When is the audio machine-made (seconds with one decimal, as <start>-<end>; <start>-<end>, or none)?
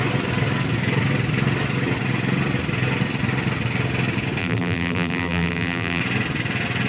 4.4-6.0